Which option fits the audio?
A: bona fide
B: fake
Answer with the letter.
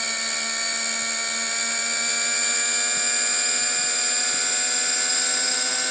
A